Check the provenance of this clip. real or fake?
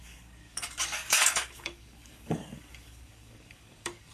fake